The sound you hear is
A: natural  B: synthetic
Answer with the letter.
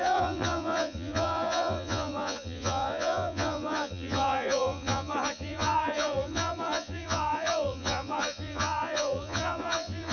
B